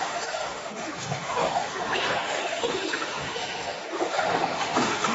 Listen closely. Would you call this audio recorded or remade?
remade